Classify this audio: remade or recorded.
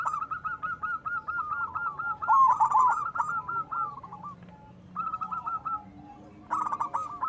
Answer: recorded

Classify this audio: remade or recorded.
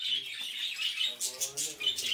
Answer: recorded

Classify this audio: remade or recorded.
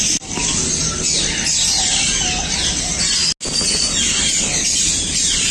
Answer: recorded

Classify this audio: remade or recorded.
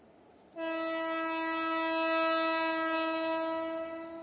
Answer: recorded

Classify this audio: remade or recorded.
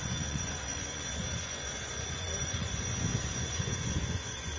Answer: remade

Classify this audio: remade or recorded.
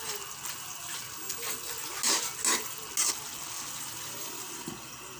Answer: recorded